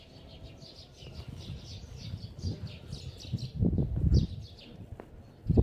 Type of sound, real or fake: real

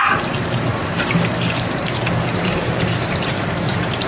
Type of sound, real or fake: fake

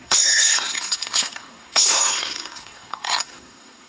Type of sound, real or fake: fake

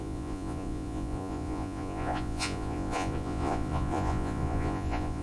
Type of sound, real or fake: fake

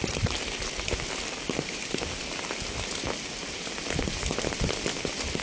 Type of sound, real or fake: real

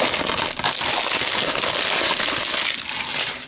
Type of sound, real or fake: real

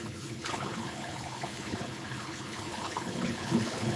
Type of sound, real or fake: fake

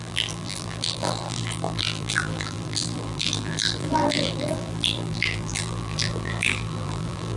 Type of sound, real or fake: fake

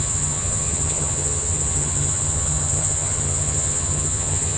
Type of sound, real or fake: fake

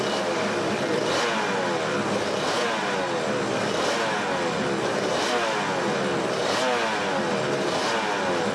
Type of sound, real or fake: real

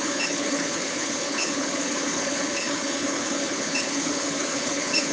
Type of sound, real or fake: fake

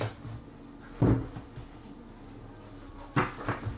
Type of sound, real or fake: real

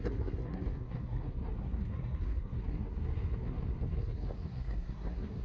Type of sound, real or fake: fake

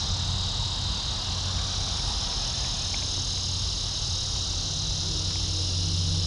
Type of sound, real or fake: real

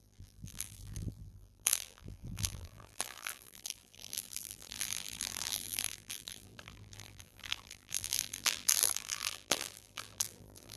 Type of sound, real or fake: fake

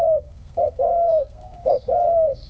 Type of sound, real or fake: fake